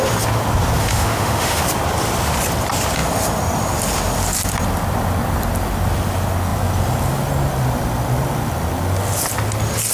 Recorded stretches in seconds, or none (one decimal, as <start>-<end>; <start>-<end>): 0.0-0.8; 1.6-9.9